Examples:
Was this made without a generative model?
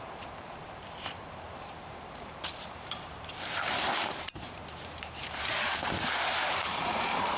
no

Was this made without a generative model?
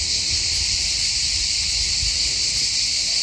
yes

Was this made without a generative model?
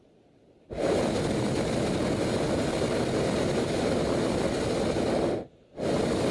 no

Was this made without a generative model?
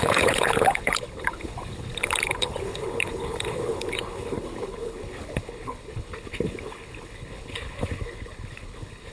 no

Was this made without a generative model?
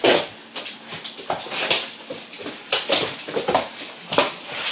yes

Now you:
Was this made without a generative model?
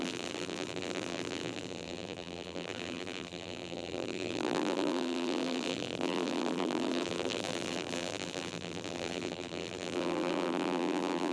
no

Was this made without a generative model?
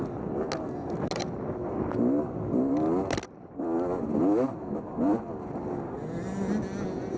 yes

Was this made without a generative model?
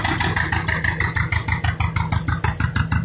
yes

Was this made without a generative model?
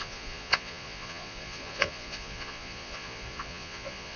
no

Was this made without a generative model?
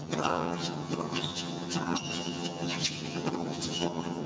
no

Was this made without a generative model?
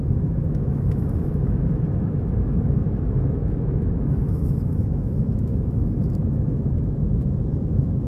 no